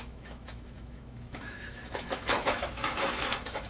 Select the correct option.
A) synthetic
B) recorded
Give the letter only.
A